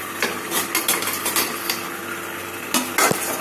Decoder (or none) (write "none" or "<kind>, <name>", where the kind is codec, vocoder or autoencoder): none